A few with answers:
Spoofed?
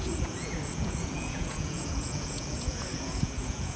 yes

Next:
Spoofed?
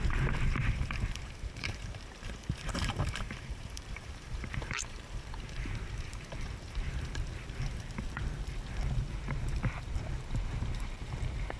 yes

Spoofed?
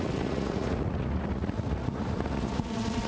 yes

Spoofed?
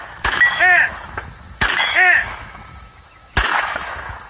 yes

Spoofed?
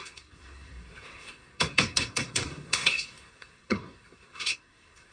yes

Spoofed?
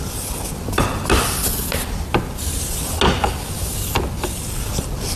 no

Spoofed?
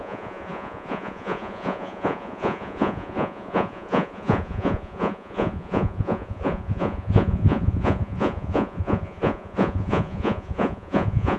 yes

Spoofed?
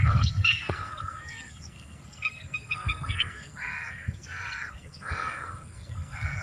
yes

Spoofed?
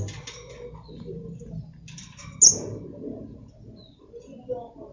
no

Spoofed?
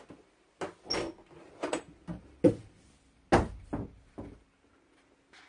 no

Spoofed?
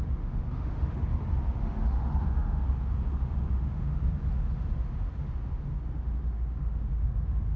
yes